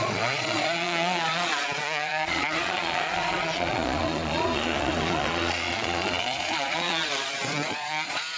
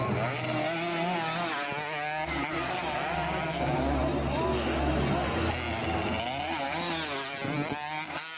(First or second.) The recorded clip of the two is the second